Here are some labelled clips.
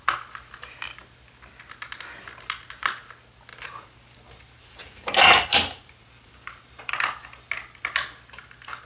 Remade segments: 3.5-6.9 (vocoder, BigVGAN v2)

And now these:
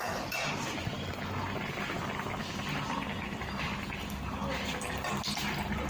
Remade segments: none

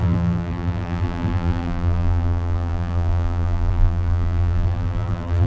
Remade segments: 0.0-5.5 (vocoder, BigVGAN v2)